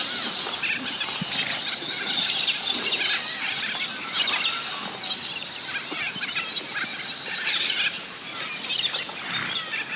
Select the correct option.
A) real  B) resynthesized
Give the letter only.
A